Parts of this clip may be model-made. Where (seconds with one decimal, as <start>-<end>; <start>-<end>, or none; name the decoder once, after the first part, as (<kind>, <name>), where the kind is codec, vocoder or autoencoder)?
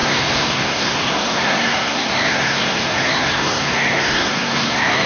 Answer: 0.0-5.1 (codec, SNAC)